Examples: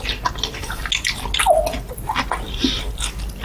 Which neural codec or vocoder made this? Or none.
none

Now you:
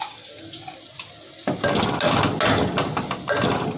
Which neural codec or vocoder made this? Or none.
none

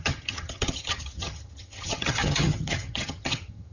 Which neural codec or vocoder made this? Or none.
vocoder, HiFi-GAN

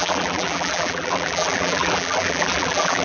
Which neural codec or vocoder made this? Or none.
vocoder, BigVGAN v2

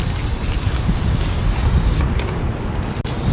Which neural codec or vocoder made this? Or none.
none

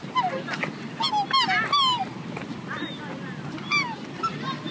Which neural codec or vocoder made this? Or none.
none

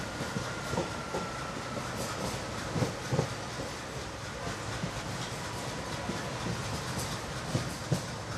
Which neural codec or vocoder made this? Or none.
none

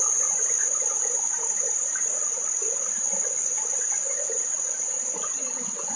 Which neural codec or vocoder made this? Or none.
none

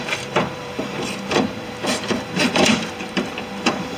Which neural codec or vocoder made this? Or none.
vocoder, BigVGAN v2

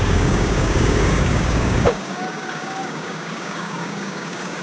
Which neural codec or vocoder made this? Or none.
codec, DAC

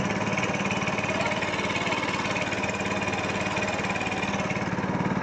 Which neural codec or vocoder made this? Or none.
none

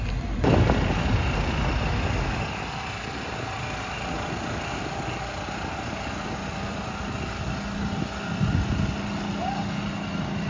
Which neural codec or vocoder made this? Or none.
none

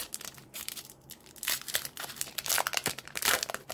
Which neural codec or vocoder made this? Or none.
vocoder, BigVGAN v2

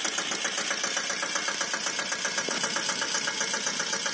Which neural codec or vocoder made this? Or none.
none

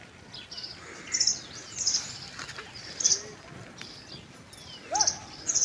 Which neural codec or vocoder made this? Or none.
none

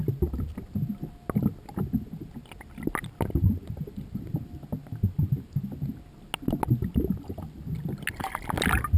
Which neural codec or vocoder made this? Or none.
none